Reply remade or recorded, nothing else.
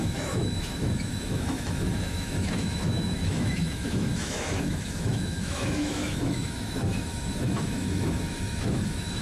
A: remade